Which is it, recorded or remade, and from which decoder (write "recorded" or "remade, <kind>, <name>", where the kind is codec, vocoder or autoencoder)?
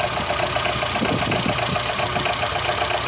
recorded